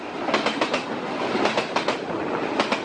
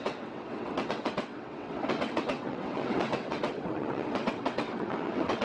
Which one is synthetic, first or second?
second